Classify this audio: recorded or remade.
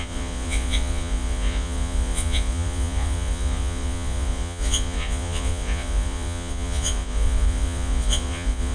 remade